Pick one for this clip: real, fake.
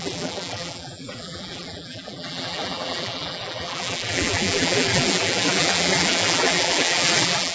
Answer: fake